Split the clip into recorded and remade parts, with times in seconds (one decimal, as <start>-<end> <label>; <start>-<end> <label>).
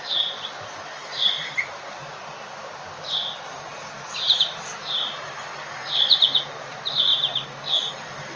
0.0-1.0 recorded; 1.0-2.3 remade; 2.3-3.7 recorded; 3.7-5.3 remade; 5.3-8.4 recorded